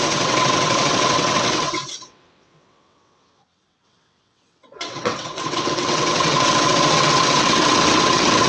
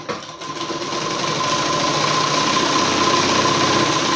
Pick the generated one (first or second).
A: first